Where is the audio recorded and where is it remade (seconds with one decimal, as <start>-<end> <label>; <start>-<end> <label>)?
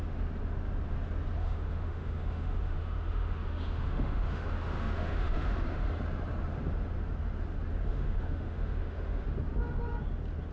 0.0-1.4 recorded; 1.4-5.9 remade; 5.9-7.9 recorded; 7.9-9.2 remade; 9.2-10.5 recorded